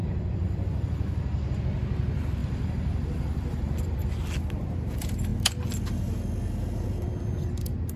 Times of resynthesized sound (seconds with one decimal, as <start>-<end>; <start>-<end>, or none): 0.0-1.6; 2.4-4.1